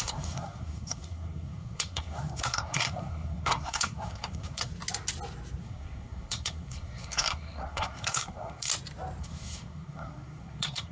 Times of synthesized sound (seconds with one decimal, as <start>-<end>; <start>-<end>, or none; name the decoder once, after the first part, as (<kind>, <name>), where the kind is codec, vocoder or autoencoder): 0.0-4.7 (codec, SNAC); 5.6-8.7; 9.2-10.9